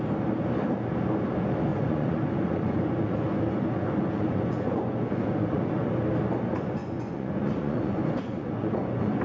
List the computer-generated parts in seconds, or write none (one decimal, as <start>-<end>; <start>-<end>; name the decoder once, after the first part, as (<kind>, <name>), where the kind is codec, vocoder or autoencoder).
1.7-5.9 (vocoder, Vocos); 6.8-9.2